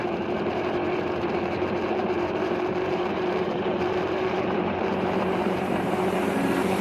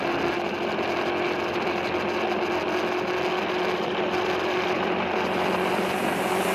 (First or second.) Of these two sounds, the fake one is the first